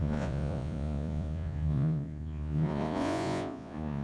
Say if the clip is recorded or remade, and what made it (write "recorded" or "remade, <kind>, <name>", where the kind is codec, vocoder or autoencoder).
remade, vocoder, Vocos